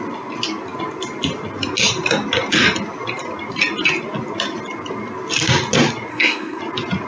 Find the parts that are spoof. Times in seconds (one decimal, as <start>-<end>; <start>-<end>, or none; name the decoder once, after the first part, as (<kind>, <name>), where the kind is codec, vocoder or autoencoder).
6.1-6.6 (codec, SNAC)